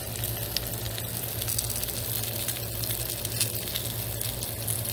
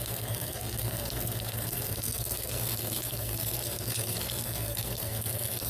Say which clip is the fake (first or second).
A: second